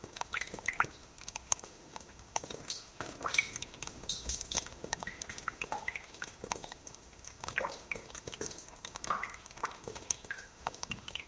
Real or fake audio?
fake